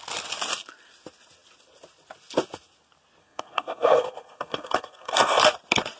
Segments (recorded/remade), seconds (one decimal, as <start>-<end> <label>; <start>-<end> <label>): 0.0-3.2 recorded; 3.2-5.4 remade; 5.4-6.0 recorded